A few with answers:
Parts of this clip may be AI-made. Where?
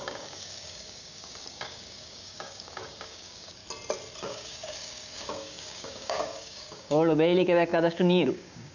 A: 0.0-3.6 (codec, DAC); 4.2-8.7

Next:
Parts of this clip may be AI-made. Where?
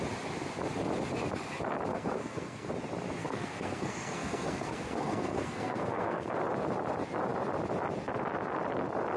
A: 1.9-2.7 (codec, SNAC); 3.2-6.4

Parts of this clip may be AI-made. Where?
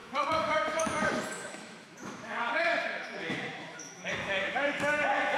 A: 0.0-5.4 (autoencoder, DAC-VAE)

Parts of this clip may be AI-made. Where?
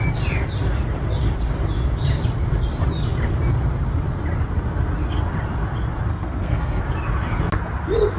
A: 6.1-6.8 (codec, SNAC)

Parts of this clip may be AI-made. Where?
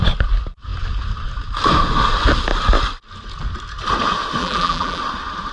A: 4.4-5.0 (vocoder, BigVGAN v2)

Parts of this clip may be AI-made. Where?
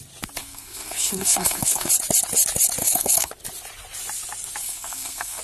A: 0.4-1.9 (codec, SNAC); 2.8-3.3; 4.6-5.4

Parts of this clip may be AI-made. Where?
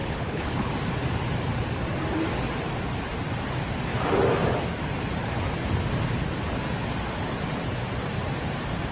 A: 0.0-0.7 (codec, HILCodec)